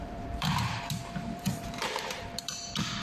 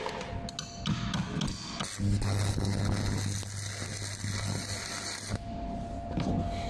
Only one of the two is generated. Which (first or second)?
first